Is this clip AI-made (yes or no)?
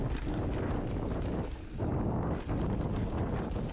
no